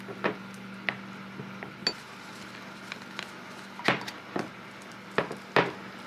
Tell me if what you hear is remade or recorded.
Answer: recorded